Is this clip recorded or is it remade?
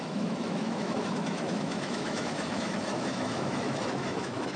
remade